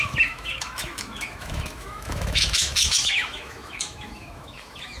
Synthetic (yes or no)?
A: yes